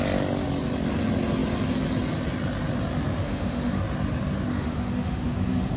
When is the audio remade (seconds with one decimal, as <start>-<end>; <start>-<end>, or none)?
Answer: 3.2-3.8; 4.5-5.8